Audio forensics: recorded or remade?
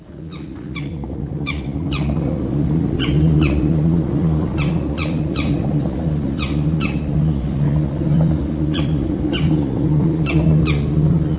remade